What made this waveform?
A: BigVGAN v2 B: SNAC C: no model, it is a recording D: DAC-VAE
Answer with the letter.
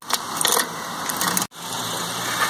C